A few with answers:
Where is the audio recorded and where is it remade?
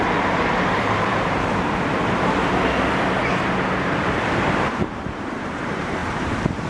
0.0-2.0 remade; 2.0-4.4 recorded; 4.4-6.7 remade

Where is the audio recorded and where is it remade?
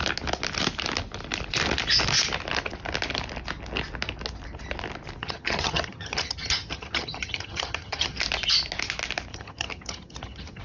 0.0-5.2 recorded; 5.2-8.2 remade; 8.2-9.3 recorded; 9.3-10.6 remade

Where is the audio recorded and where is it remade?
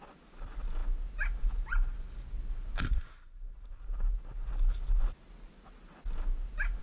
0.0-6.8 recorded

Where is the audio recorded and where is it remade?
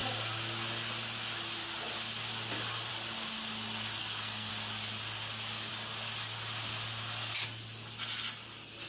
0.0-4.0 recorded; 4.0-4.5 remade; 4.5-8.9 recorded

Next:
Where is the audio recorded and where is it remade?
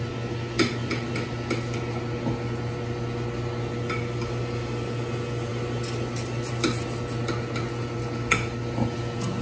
0.0-9.4 recorded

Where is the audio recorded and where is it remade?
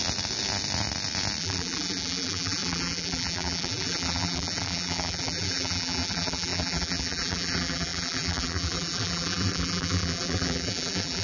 0.0-1.4 recorded; 1.4-11.2 remade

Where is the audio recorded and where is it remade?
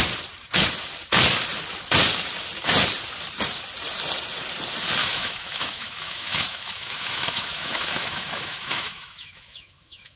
0.0-5.0 recorded; 5.0-10.2 remade